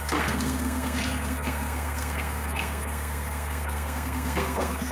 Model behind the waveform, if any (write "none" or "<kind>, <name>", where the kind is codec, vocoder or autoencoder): codec, SNAC